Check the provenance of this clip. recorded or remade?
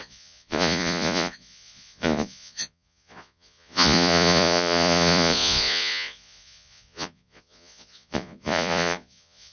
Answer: remade